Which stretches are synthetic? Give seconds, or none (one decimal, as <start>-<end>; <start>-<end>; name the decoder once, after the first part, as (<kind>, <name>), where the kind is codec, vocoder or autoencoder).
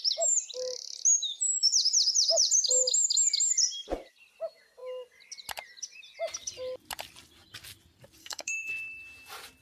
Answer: 8.2-8.7 (codec, SNAC)